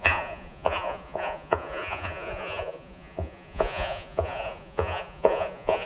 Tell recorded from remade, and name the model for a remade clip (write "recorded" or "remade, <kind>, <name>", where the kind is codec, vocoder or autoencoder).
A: remade, vocoder, Vocos